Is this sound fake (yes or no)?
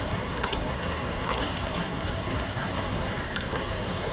yes